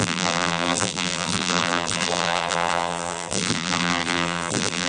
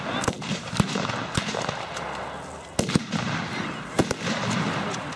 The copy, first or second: first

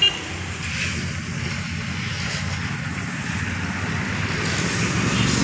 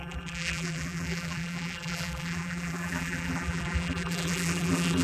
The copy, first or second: second